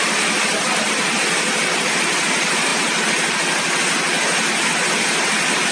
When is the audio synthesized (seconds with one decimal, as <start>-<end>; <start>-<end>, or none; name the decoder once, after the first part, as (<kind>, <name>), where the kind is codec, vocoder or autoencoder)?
0.0-2.7 (vocoder, BigVGAN v2); 4.9-5.7